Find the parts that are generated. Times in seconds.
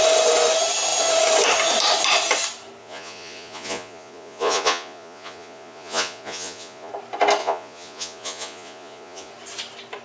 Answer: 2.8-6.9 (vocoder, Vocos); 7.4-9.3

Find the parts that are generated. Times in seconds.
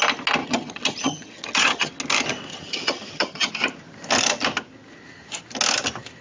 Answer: 0.4-1.9 (vocoder, HiFi-GAN); 2.5-3.5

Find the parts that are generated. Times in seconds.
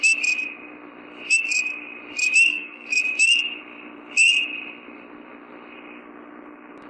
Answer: 2.5-3.0 (codec, SNAC)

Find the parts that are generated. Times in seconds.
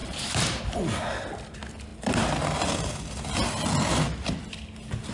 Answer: 0.0-0.6 (vocoder, BigVGAN v2)